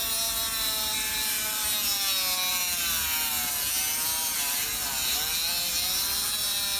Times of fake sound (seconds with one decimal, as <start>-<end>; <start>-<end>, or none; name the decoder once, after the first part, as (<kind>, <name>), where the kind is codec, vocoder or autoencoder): 0.6-1.6 (vocoder, BigVGAN v2); 2.5-6.8